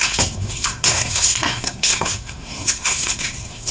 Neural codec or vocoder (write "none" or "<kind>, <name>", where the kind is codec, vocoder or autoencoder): codec, SNAC